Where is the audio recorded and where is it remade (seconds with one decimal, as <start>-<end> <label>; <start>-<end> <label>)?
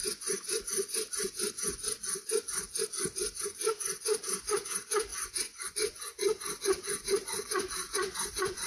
0.0-8.7 remade